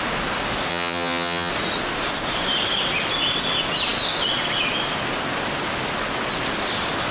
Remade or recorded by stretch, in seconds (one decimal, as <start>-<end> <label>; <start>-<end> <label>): 0.0-0.7 recorded; 0.7-1.5 remade; 1.5-7.1 recorded